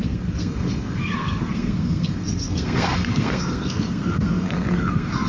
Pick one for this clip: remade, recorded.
remade